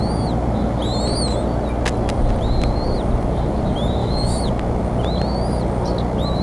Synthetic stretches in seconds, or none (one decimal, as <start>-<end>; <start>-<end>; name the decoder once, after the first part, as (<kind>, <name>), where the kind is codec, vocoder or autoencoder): 4.0-4.5 (autoencoder, DAC-VAE)